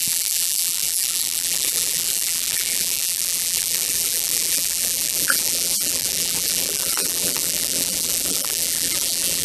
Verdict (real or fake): fake